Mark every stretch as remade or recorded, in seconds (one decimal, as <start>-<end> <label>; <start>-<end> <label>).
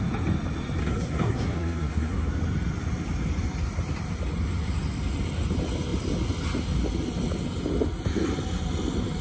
0.0-0.8 recorded; 0.8-2.3 remade; 2.3-9.2 recorded